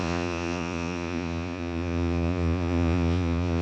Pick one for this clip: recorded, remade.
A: remade